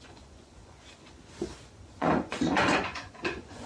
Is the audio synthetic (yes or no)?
yes